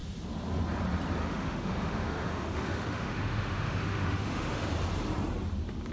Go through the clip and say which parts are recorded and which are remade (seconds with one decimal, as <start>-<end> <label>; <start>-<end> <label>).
0.0-1.2 recorded; 1.2-4.7 remade; 4.7-5.9 recorded